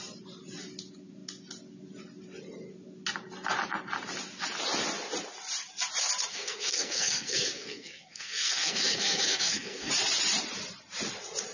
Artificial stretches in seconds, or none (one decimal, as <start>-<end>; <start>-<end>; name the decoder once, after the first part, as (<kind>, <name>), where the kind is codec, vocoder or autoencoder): 6.3-9.9 (codec, SNAC)